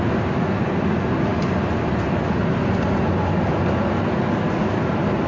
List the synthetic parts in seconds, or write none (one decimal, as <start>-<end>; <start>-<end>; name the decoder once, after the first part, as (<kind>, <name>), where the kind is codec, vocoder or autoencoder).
none